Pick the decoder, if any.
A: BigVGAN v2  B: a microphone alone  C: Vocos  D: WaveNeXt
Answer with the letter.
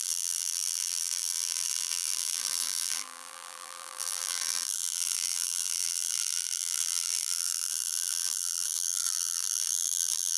A